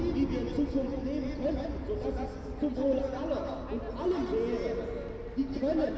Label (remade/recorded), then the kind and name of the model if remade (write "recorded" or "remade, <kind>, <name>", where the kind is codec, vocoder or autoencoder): recorded